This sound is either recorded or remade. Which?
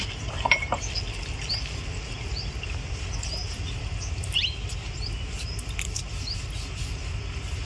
recorded